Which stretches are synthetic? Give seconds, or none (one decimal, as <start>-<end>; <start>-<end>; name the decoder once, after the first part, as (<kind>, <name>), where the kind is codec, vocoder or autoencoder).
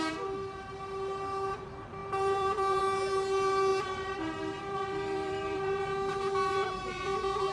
2.0-2.8 (vocoder, BigVGAN v2); 3.7-5.8